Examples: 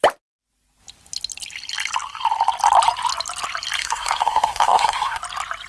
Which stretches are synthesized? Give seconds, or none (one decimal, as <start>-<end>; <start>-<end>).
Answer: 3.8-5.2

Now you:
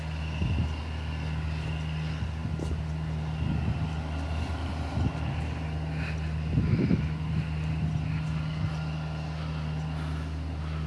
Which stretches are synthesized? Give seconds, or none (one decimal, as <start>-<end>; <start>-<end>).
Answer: 2.4-2.9

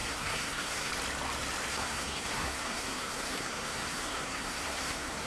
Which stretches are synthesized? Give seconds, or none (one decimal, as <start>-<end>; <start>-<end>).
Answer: 0.0-0.9; 1.7-5.3